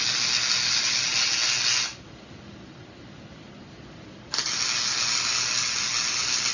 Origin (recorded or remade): recorded